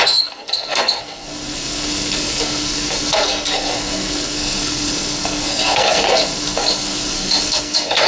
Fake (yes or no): yes